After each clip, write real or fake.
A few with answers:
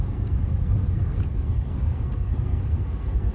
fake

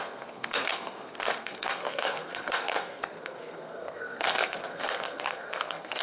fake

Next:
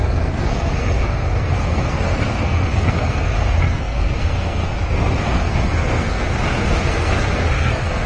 fake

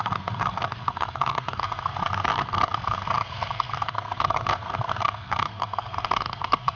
fake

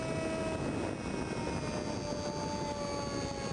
real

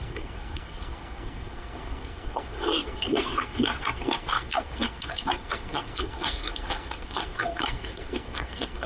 fake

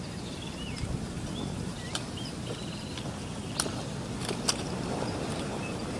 real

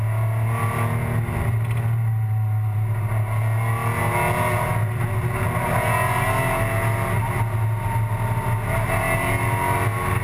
real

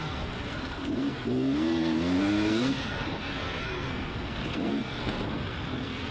fake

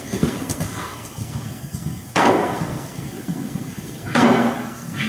fake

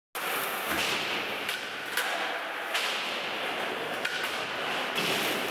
real